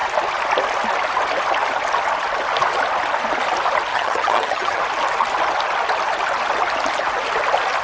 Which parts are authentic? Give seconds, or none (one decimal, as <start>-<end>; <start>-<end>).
0.0-3.9; 4.8-7.8